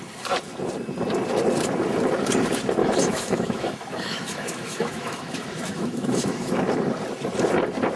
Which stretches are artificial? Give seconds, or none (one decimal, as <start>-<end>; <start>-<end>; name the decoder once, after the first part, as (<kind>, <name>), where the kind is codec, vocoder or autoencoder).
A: 2.8-6.6 (autoencoder, DAC-VAE)